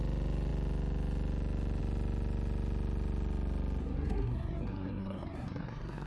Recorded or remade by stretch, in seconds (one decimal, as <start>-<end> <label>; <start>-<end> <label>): 0.0-3.8 recorded; 3.8-6.1 remade